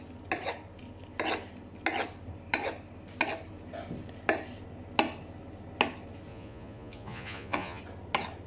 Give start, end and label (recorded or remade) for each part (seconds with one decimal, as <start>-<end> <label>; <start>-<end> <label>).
0.0-6.3 recorded; 6.3-7.8 remade; 7.8-8.5 recorded